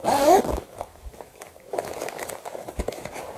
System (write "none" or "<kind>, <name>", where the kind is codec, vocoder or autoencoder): codec, DAC